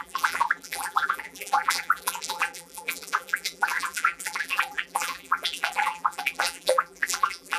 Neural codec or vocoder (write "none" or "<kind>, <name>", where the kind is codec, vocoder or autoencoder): vocoder, BigVGAN v2